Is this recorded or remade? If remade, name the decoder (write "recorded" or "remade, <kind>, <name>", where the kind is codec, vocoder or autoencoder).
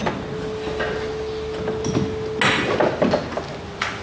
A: recorded